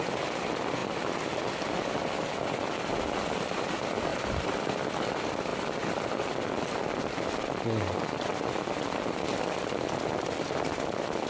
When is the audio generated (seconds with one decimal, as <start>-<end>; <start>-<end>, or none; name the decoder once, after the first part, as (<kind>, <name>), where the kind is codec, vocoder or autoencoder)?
4.1-4.7 (vocoder, BigVGAN v2)